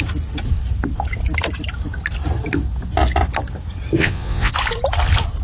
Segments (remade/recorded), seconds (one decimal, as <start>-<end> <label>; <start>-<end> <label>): 0.0-4.0 recorded; 4.0-4.5 remade; 4.5-5.4 recorded